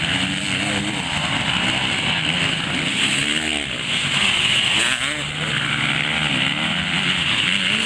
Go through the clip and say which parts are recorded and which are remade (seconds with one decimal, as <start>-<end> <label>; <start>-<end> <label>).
0.0-7.9 recorded